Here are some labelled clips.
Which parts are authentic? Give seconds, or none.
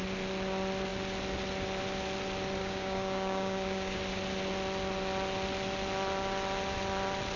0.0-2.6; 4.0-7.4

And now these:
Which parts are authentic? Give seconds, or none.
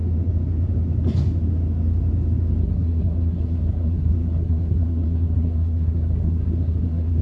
0.0-2.6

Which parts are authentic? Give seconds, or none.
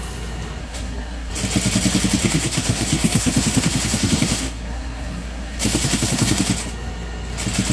0.0-0.6; 1.3-2.2; 6.4-7.7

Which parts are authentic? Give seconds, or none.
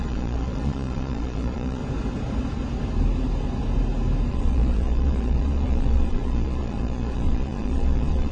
1.8-4.3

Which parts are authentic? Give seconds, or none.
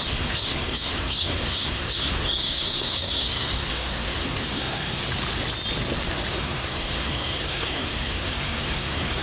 5.0-6.3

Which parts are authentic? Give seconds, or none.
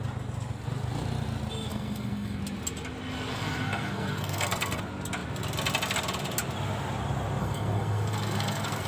0.0-1.7; 2.4-3.3; 4.8-7.4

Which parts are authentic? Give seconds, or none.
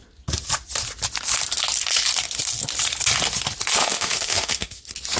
0.0-3.8; 4.8-5.2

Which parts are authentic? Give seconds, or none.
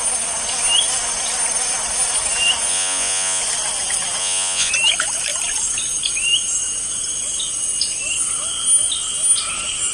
0.0-2.7; 3.4-4.2; 4.7-9.9